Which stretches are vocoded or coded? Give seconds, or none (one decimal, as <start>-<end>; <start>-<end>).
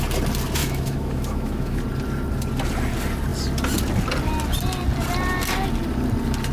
0.6-1.8